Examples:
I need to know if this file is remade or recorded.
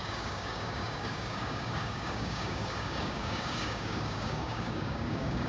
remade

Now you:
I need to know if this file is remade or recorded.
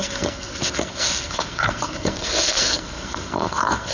remade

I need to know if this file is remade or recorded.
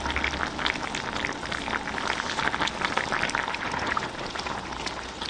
recorded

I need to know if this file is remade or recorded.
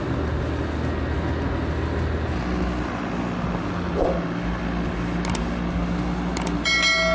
recorded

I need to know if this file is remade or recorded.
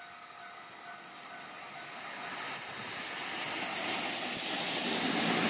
recorded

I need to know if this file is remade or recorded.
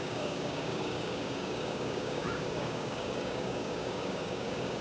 remade